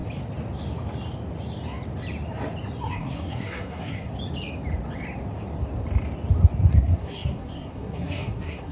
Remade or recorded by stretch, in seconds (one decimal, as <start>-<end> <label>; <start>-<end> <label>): 0.0-2.8 recorded; 2.8-4.1 remade; 4.1-6.7 recorded; 6.7-8.7 remade